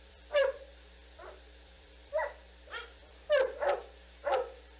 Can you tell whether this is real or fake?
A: fake